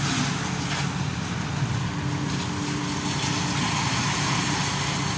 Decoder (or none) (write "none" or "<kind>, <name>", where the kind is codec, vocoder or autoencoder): none